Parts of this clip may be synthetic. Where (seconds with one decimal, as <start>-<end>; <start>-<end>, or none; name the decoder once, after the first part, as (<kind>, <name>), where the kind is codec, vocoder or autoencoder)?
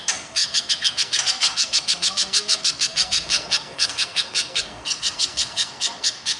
0.0-6.4 (codec, SNAC)